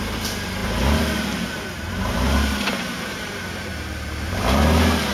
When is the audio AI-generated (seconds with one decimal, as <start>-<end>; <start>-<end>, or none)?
0.6-2.8; 3.7-4.6